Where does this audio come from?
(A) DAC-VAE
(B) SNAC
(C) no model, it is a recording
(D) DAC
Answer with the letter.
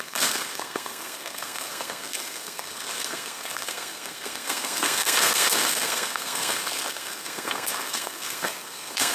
B